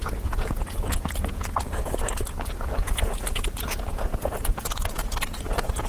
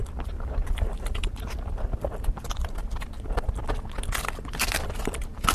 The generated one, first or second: first